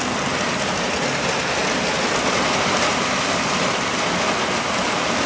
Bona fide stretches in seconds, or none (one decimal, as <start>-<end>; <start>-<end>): 0.0-5.3